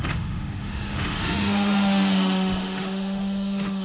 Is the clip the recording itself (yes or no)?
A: no